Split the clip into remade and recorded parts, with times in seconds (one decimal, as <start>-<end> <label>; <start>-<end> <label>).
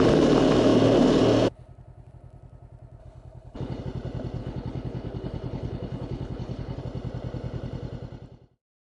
0.0-3.0 recorded; 3.0-3.8 remade; 3.8-4.4 recorded; 4.4-6.8 remade; 6.8-9.0 recorded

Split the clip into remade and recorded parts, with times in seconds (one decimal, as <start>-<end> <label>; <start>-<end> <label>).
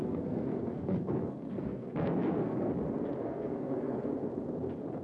0.0-2.7 remade; 2.7-3.2 recorded; 3.2-4.1 remade; 4.1-5.0 recorded